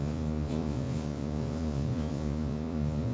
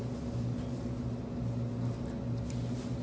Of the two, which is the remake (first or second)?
first